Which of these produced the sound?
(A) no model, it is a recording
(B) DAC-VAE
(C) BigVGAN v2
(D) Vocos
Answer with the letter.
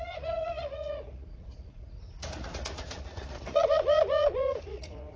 D